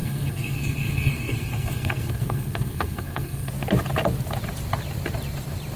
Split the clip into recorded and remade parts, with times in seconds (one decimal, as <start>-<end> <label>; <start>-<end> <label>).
0.0-3.5 remade; 3.5-5.8 recorded